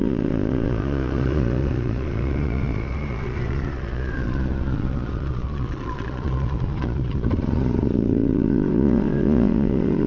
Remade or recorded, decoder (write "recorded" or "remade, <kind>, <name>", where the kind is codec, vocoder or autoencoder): remade, vocoder, Vocos